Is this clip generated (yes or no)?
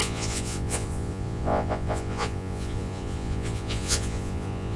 yes